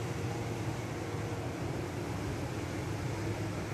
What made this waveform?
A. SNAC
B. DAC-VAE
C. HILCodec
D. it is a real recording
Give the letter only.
D